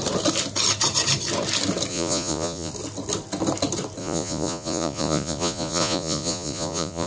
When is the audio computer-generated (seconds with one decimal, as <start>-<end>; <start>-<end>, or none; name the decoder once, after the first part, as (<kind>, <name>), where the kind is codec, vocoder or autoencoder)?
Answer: 1.9-2.7 (vocoder, Vocos); 4.0-7.1